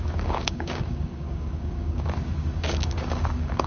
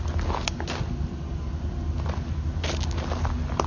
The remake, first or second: first